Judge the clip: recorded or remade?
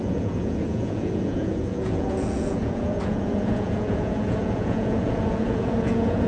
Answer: remade